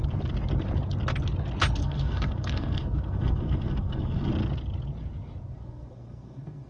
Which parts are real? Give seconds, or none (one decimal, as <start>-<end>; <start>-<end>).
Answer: 0.0-1.8; 4.3-5.5